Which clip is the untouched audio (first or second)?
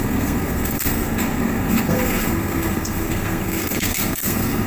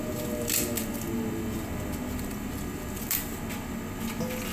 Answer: second